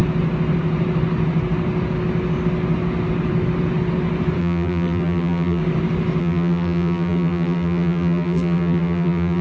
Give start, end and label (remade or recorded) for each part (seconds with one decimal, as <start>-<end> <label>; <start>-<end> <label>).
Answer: 0.0-4.4 recorded; 4.4-5.6 remade; 5.6-6.2 recorded; 6.2-9.4 remade